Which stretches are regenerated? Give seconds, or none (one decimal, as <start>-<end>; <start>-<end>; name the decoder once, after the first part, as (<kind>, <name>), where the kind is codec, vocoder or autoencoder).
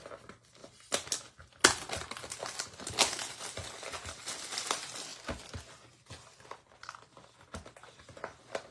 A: none